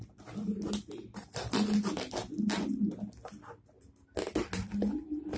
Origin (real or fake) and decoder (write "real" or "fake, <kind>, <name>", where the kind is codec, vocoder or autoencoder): real